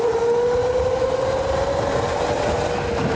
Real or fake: real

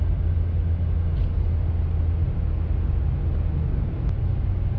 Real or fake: real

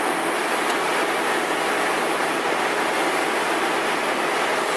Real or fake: real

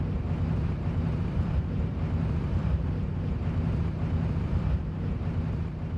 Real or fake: fake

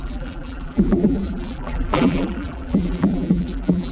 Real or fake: fake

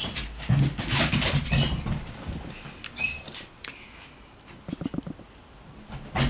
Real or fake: real